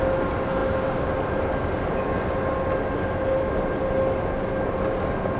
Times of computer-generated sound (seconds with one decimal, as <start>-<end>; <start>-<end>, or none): none